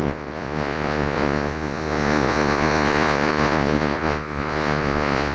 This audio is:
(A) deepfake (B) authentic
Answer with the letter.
A